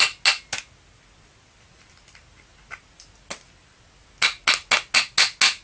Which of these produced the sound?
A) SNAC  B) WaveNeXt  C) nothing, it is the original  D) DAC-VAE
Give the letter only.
C